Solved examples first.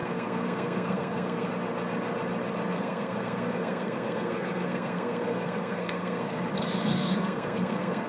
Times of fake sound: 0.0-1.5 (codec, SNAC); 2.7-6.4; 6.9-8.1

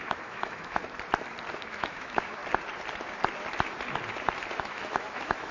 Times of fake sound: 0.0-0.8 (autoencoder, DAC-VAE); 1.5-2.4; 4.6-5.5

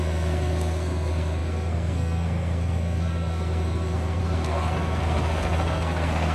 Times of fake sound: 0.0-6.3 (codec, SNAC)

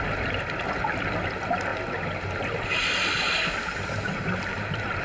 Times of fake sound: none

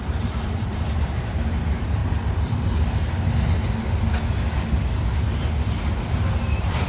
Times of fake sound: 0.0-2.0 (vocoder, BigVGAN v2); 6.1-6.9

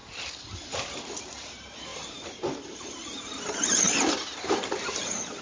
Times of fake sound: 1.0-5.4 (vocoder, BigVGAN v2)

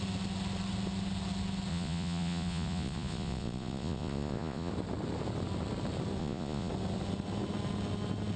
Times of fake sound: 1.7-4.7 (vocoder, Vocos); 6.2-6.7